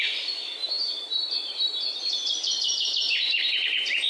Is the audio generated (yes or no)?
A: yes